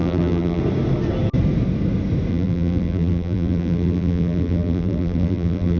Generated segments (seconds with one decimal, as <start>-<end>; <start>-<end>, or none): 0.0-0.6; 2.3-5.8